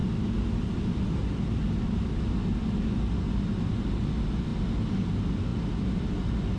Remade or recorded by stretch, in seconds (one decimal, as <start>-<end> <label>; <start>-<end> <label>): 0.0-6.6 recorded

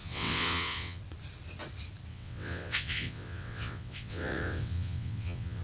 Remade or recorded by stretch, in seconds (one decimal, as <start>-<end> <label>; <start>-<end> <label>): 0.0-1.0 remade; 1.0-2.1 recorded; 2.1-5.6 remade

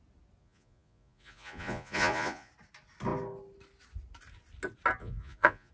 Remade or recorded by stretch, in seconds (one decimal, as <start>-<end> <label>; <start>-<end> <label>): 0.0-0.4 recorded; 0.4-2.5 remade; 2.5-5.0 recorded; 5.0-5.7 remade

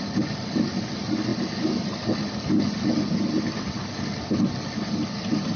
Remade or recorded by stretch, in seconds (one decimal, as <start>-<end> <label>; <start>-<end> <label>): 0.0-5.6 recorded

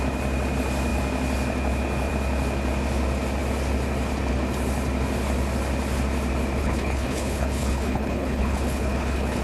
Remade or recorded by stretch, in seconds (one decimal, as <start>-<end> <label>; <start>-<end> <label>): 0.0-6.6 recorded; 6.6-9.4 remade

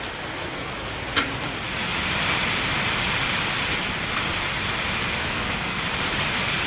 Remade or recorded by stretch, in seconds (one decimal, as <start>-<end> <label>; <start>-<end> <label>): 0.0-0.4 recorded; 0.4-0.9 remade; 0.9-5.2 recorded; 5.2-5.8 remade; 5.8-6.7 recorded